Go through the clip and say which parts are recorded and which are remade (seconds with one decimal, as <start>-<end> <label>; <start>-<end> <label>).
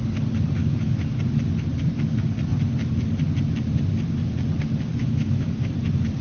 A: 0.0-0.6 recorded; 0.6-1.2 remade; 1.2-5.0 recorded; 5.0-5.7 remade; 5.7-6.2 recorded